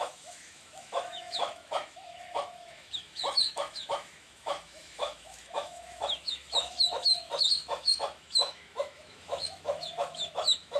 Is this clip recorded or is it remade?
remade